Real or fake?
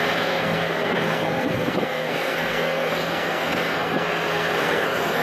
fake